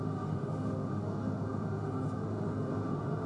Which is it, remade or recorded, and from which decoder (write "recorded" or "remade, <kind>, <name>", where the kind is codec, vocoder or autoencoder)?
remade, autoencoder, DAC-VAE